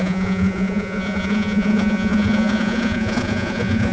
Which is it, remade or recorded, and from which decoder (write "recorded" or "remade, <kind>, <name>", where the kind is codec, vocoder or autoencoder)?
remade, vocoder, Vocos